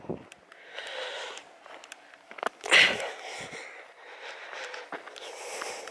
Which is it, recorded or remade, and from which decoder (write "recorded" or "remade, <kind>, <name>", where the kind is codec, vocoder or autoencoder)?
recorded